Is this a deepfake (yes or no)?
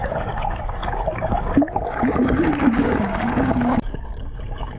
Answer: yes